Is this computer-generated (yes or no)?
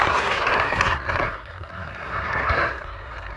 yes